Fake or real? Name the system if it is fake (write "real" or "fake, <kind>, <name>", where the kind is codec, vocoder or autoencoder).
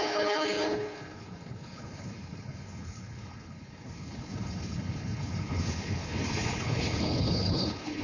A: fake, codec, HILCodec